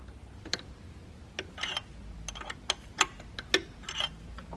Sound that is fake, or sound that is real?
real